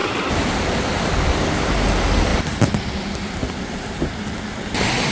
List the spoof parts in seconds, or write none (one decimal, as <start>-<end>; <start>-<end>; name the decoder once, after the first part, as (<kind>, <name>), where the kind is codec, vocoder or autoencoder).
none